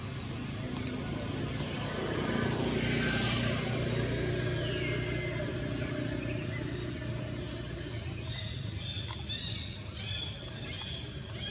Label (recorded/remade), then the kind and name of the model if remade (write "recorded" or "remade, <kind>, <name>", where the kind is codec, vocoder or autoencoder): recorded